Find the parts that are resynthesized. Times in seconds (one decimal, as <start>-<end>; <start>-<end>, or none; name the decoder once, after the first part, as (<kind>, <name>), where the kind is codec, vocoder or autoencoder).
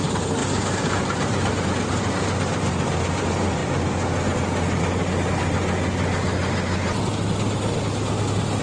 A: 0.0-0.4 (vocoder, BigVGAN v2); 1.0-3.6